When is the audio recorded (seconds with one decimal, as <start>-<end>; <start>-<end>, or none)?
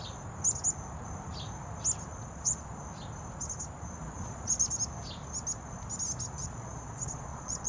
0.0-2.1; 2.7-4.0; 4.5-6.4